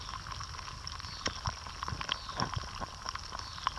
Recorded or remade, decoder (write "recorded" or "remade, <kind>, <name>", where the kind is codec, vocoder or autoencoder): recorded